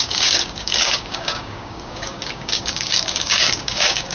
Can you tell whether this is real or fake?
fake